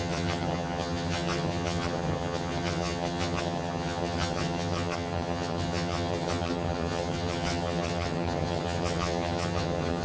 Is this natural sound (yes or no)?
no